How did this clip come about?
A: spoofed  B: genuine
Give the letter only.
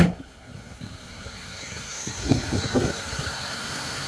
A